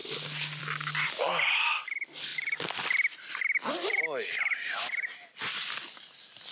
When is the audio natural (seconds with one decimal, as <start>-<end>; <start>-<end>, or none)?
0.0-6.5

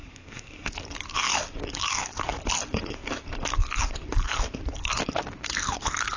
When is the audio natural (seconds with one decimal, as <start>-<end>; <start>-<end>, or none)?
0.7-6.2